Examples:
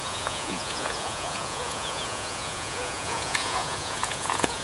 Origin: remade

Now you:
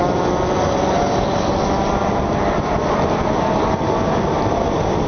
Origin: recorded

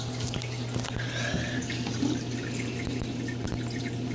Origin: recorded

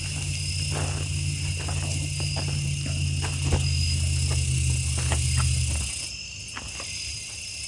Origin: recorded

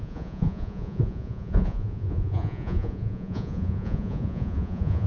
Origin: remade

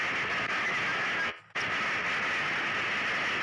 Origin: recorded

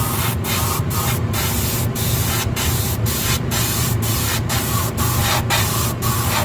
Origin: recorded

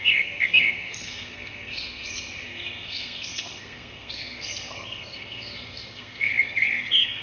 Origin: remade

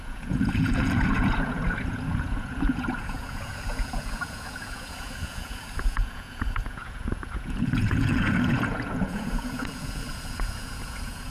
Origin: remade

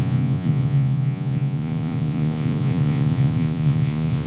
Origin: remade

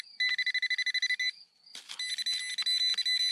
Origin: recorded